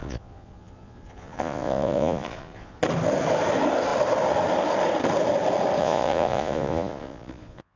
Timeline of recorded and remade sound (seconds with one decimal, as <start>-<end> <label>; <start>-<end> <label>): 0.0-2.8 remade; 2.8-5.8 recorded; 5.8-7.8 remade